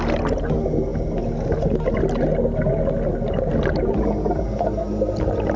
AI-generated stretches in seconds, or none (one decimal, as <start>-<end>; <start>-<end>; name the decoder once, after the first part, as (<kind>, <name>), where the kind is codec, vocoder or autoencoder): none